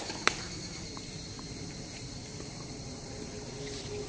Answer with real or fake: real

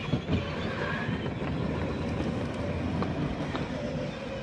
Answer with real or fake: real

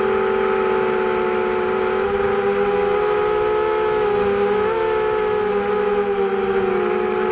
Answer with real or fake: real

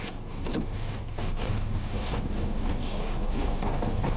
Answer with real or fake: fake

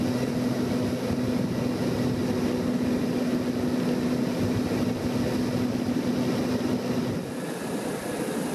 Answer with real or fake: real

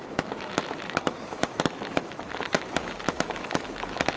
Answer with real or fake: fake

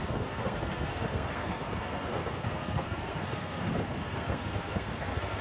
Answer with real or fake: fake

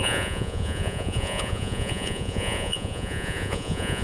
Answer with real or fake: fake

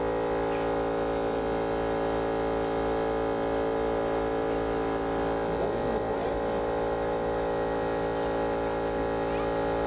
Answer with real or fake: real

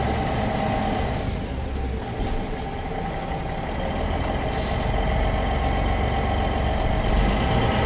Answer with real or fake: real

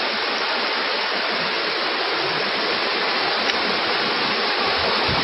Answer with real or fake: real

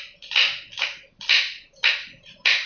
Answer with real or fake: real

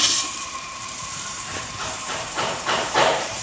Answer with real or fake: fake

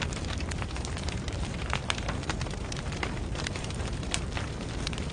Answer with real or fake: fake